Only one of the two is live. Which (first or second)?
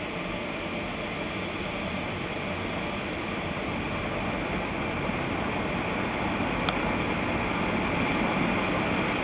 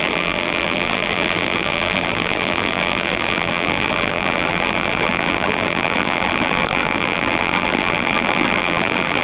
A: first